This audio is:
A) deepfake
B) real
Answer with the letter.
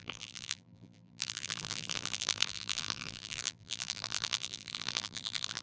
A